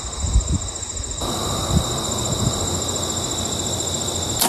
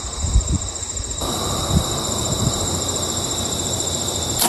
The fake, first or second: second